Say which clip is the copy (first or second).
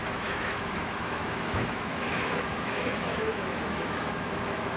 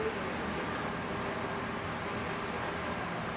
first